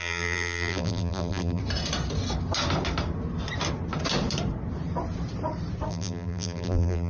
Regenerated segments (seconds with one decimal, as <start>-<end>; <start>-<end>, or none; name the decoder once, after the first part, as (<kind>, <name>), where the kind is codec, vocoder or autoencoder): 0.0-1.6 (vocoder, BigVGAN v2); 5.9-7.1

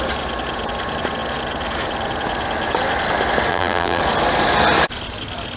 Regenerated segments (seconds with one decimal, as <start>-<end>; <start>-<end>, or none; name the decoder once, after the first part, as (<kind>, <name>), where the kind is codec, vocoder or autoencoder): 3.5-4.0 (vocoder, BigVGAN v2)

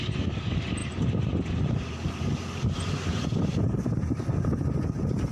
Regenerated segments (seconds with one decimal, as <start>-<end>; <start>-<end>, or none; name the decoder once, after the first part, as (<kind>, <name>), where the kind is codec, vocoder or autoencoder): 0.8-4.0 (vocoder, BigVGAN v2)

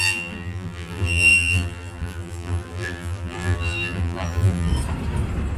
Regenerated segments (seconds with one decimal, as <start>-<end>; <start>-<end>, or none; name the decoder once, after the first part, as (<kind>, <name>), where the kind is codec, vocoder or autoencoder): 0.0-4.7 (vocoder, BigVGAN v2)

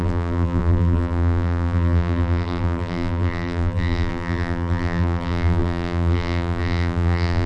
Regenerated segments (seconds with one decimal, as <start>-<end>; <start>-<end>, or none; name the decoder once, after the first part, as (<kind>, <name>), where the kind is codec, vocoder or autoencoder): 0.0-7.5 (vocoder, BigVGAN v2)

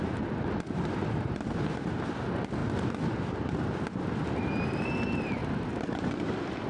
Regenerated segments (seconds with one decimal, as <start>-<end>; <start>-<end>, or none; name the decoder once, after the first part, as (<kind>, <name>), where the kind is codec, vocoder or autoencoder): 1.0-1.9 (vocoder, BigVGAN v2); 5.4-6.1

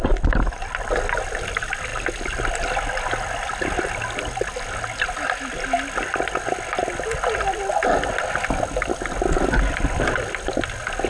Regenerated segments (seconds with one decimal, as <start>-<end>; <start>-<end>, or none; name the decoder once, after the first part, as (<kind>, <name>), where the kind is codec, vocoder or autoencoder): none

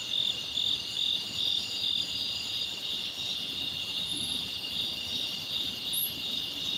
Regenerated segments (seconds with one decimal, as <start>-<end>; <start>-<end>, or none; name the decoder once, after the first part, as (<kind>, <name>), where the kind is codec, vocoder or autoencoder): 4.1-6.0 (vocoder, BigVGAN v2)